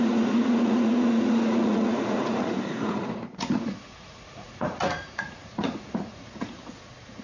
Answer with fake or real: fake